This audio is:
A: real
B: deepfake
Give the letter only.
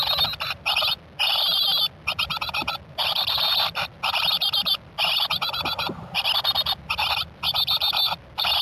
A